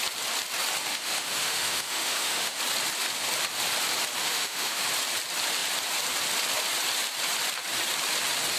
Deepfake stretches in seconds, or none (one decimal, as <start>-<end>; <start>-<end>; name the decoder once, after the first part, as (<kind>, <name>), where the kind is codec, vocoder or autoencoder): 0.9-2.6 (autoencoder, DAC-VAE); 4.2-4.8